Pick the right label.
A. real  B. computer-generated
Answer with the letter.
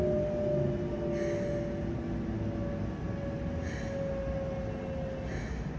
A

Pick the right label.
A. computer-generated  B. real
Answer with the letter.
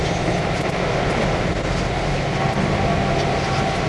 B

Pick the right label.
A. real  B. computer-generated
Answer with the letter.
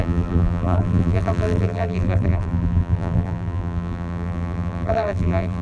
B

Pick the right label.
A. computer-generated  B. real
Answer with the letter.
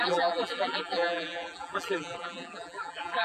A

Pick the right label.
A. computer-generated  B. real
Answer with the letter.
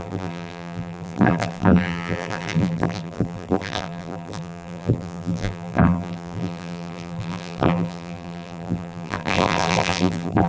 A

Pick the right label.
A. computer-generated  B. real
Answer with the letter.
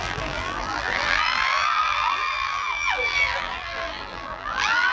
A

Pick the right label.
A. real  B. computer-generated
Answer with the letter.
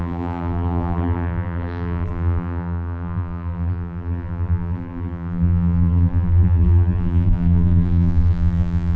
B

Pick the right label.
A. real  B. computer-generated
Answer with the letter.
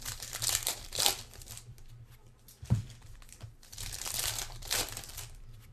B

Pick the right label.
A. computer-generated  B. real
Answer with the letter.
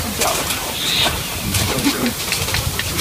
A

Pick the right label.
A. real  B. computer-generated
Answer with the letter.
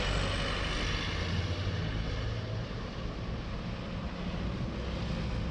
A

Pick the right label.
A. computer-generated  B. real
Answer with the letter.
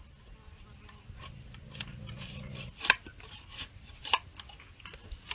B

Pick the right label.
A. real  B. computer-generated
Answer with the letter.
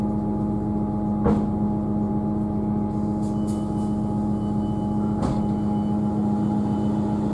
A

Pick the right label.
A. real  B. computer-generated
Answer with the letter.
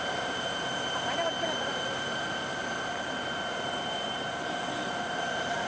B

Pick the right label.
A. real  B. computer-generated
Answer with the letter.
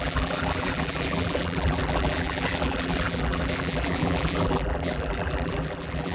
B